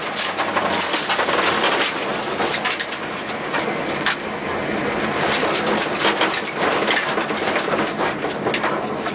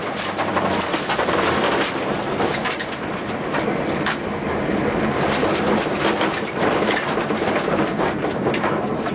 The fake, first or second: second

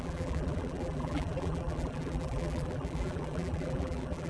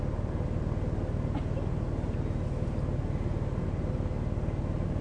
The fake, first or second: first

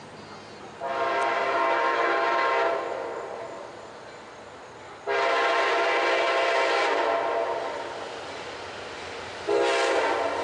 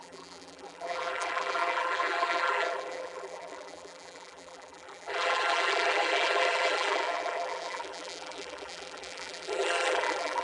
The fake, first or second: second